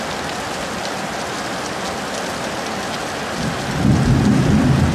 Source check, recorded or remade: recorded